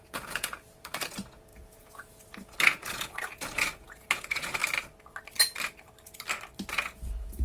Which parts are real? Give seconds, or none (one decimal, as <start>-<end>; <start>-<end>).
4.6-6.7